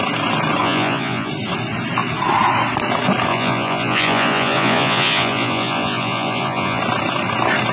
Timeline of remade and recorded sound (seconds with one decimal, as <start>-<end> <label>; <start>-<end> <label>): 0.0-0.6 recorded; 0.6-1.3 remade; 1.3-3.3 recorded; 3.3-6.8 remade; 6.8-7.7 recorded

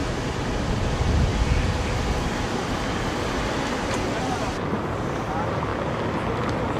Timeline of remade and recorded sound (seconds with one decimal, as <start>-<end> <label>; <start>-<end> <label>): 0.0-0.9 recorded; 0.9-1.3 remade; 1.3-4.2 recorded; 4.2-5.7 remade; 5.7-6.8 recorded